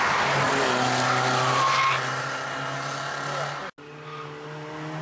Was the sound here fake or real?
real